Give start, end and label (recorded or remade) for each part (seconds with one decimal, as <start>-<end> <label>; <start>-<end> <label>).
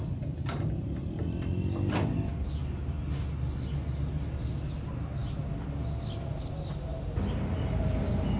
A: 0.0-8.4 recorded